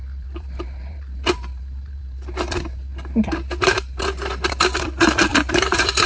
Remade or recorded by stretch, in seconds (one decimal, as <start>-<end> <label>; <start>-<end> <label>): 0.0-2.0 remade; 2.0-5.3 recorded; 5.3-6.1 remade